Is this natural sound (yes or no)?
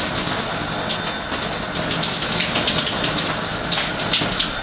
yes